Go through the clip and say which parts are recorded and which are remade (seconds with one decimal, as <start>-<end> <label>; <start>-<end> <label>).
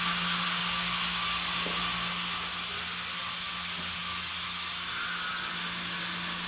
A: 0.0-6.5 recorded